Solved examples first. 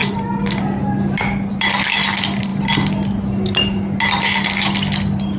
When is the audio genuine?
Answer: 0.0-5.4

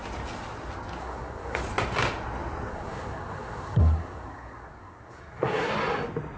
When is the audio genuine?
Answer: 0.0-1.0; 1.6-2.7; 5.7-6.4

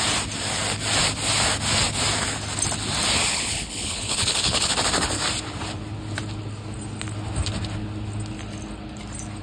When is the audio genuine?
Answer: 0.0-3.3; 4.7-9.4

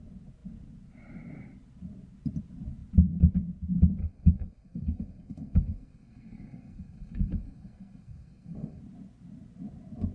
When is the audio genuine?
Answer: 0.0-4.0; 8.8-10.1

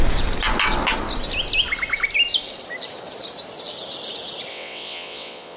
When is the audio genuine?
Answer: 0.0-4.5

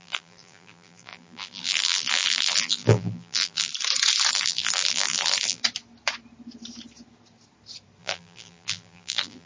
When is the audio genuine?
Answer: 3.7-4.3; 5.6-8.0